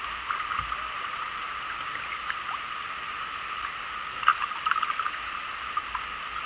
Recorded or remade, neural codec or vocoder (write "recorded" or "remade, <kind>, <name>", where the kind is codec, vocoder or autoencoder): recorded